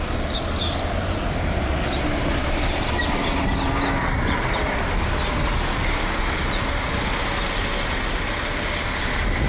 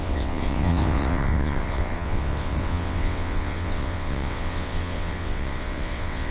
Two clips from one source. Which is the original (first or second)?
first